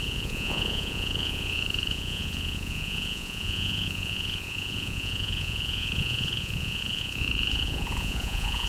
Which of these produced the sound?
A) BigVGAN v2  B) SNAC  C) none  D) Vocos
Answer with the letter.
D